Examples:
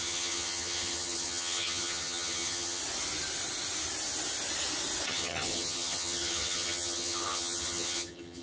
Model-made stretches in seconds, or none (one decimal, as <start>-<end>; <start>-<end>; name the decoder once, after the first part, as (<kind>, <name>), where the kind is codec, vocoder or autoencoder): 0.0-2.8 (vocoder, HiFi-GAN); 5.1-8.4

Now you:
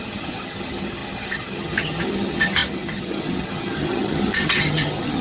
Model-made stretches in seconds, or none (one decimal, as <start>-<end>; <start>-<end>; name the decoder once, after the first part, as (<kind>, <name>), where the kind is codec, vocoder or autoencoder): 0.0-5.2 (vocoder, HiFi-GAN)

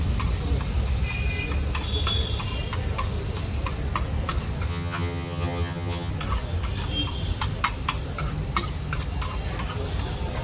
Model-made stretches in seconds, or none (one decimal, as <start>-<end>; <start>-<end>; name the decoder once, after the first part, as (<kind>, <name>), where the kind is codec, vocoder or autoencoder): 4.7-6.1 (vocoder, HiFi-GAN)